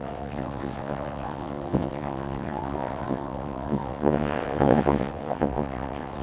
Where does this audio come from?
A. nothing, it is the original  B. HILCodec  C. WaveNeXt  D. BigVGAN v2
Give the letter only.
C